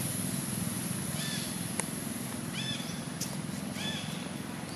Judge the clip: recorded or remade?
recorded